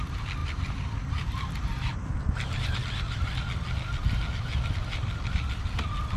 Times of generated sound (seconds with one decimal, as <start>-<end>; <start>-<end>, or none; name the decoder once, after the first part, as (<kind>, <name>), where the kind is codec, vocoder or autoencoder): none